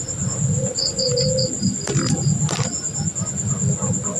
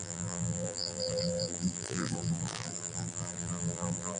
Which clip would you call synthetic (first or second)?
second